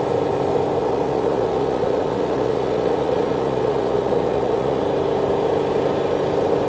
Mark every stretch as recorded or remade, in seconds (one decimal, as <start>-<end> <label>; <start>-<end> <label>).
0.0-0.8 recorded; 0.8-4.8 remade; 4.8-6.7 recorded